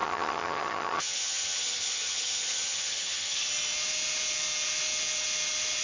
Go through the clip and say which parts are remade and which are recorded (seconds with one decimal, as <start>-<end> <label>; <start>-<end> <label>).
0.0-3.5 remade; 3.5-5.8 recorded